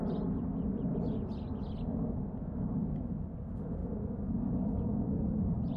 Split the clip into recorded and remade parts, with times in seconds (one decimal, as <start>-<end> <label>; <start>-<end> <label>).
0.0-5.8 recorded